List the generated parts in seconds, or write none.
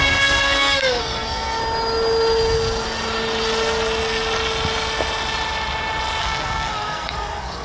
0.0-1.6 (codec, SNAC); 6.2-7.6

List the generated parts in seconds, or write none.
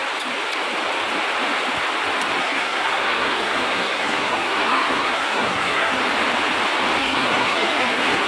2.4-6.0 (codec, SNAC); 7.0-8.3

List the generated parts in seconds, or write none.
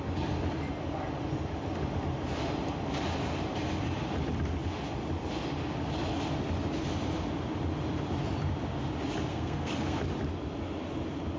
9.3-10.0 (codec, SNAC)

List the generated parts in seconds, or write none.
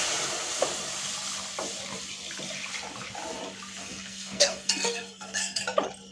3.8-5.6 (codec, SNAC)